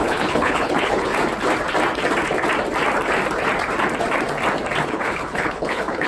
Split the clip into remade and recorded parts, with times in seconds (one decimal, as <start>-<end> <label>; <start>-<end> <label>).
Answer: 0.0-1.1 remade; 1.1-4.8 recorded; 4.8-6.1 remade

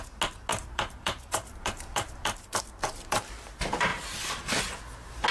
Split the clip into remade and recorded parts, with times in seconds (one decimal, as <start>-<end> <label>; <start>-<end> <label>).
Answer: 0.0-0.5 recorded; 0.5-2.6 remade; 2.6-3.9 recorded; 3.9-4.6 remade; 4.6-5.3 recorded

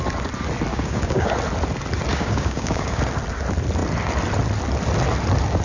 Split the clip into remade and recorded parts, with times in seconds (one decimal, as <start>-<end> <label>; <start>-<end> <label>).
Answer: 0.0-0.7 recorded; 0.7-1.3 remade; 1.3-2.1 recorded; 2.1-3.0 remade; 3.0-5.6 recorded

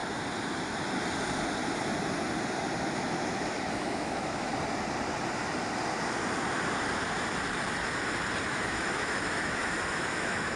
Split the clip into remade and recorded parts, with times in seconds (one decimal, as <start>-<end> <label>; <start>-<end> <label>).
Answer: 0.0-2.8 recorded; 2.8-4.5 remade; 4.5-8.5 recorded; 8.5-10.6 remade

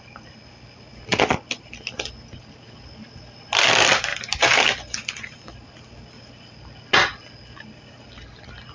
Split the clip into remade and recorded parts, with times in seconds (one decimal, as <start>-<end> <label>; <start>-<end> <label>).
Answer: 0.0-8.7 recorded

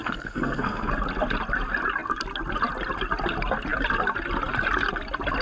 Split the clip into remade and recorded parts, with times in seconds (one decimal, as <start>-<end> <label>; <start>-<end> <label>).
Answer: 0.0-0.9 remade; 0.9-5.4 recorded